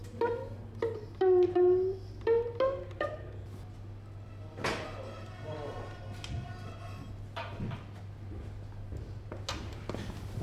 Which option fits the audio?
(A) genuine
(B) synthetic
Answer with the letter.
A